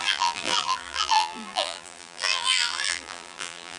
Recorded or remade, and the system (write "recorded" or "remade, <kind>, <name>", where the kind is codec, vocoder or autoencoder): remade, vocoder, BigVGAN v2